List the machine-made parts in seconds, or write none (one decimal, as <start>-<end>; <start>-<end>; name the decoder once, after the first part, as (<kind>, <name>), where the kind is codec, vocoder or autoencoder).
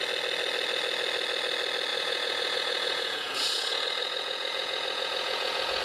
1.9-5.8 (vocoder, Vocos)